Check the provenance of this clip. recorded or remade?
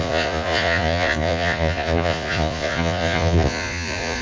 remade